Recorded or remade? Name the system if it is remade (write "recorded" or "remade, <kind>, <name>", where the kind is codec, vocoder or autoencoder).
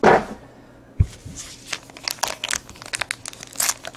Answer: recorded